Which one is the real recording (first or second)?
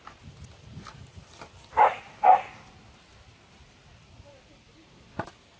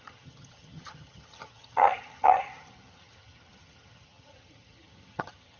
first